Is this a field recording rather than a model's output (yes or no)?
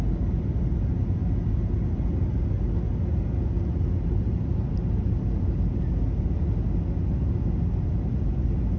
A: yes